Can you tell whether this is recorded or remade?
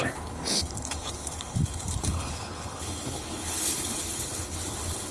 remade